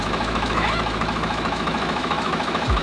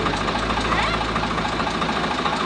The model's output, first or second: first